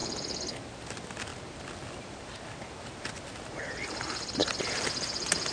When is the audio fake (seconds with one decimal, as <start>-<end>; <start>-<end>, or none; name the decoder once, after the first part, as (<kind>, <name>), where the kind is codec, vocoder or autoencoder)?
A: 0.0-0.6 (codec, HILCodec)